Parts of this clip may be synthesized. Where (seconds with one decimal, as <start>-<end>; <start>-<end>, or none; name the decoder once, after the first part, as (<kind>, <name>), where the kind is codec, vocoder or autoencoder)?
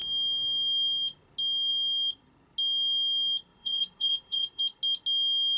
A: 3.5-4.6 (vocoder, BigVGAN v2)